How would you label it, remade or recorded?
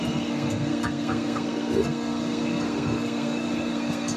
remade